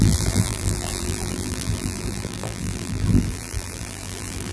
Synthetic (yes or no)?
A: yes